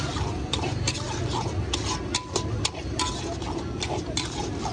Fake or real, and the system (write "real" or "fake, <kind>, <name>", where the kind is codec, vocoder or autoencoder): real